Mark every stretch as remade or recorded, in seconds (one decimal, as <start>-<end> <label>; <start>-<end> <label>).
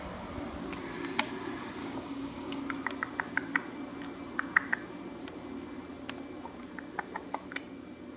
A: 0.0-1.8 recorded; 1.8-2.6 remade; 2.6-8.2 recorded